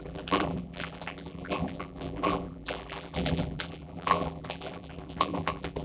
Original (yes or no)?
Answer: no